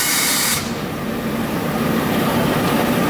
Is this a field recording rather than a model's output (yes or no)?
no